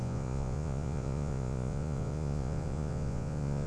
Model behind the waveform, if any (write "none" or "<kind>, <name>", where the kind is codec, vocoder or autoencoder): vocoder, Vocos